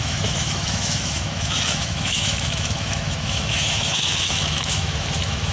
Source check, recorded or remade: remade